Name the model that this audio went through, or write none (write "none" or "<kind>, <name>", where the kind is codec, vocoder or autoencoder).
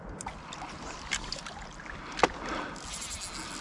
none